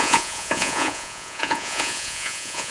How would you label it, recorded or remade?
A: remade